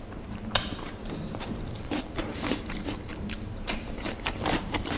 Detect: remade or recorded remade